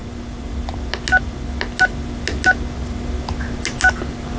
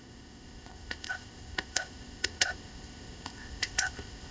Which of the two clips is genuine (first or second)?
first